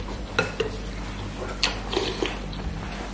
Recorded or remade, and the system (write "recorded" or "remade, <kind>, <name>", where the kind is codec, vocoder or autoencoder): recorded